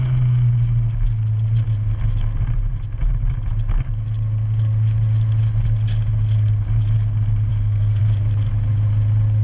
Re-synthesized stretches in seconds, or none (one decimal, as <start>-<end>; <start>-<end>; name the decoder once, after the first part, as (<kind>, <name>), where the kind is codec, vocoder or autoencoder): 7.5-8.0 (codec, SNAC)